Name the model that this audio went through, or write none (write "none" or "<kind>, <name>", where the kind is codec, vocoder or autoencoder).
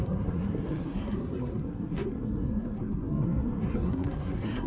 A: codec, SNAC